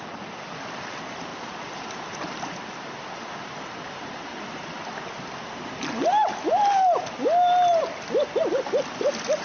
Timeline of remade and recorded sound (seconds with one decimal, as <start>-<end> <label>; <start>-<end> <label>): 0.0-9.4 recorded

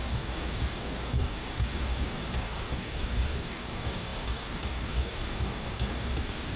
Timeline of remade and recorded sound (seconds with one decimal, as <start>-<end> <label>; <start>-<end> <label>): 0.0-6.6 remade

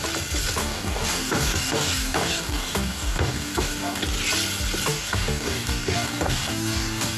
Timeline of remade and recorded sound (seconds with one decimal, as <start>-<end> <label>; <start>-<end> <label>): 0.0-0.6 recorded; 0.6-4.0 remade; 4.0-4.9 recorded; 4.9-7.2 remade

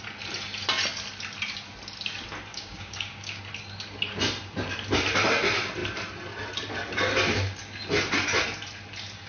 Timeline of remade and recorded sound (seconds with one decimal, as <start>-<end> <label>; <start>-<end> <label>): 0.0-2.5 recorded; 2.5-3.4 remade; 3.4-9.3 recorded

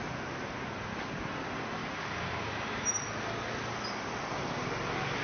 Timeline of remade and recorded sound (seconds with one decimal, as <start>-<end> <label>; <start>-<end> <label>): 0.0-1.8 recorded; 1.8-2.8 remade; 2.8-5.2 recorded

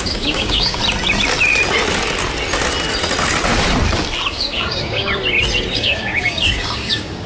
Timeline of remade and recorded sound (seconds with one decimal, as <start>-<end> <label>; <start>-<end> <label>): 0.0-0.8 remade; 0.8-4.3 recorded; 4.3-5.2 remade; 5.2-5.7 recorded; 5.7-7.3 remade

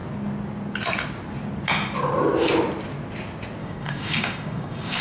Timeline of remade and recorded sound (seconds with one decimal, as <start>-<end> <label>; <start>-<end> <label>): 0.0-3.6 recorded; 3.6-5.0 remade